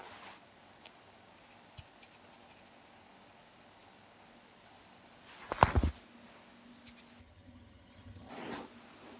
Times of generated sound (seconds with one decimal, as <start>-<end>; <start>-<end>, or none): 7.2-8.3